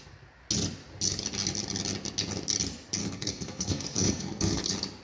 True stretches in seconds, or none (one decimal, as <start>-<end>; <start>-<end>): 0.0-3.0; 4.6-5.0